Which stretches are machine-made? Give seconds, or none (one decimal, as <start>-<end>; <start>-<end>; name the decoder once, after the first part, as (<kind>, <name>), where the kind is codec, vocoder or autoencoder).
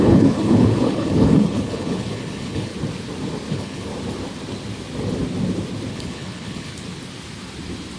0.0-2.7 (codec, HILCodec); 3.5-3.9; 5.9-6.7